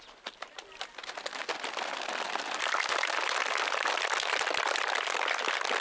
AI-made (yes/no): no